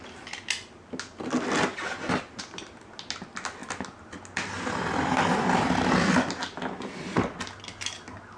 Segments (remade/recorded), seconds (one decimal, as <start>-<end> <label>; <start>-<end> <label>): 0.0-8.4 recorded